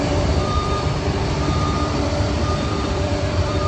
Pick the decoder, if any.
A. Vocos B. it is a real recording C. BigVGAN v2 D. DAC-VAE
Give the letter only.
C